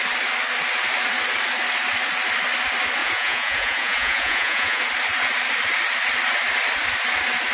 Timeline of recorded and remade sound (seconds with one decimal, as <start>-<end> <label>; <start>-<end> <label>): 0.0-3.0 recorded; 3.0-4.8 remade; 4.8-7.5 recorded